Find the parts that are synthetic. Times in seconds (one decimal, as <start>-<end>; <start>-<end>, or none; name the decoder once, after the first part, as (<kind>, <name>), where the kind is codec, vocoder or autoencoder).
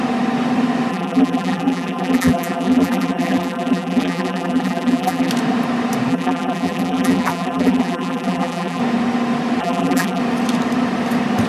0.9-5.3 (vocoder, BigVGAN v2); 6.1-8.8; 9.6-10.2